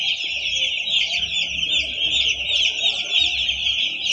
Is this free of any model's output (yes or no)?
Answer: yes